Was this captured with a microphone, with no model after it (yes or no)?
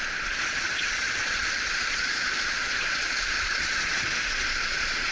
no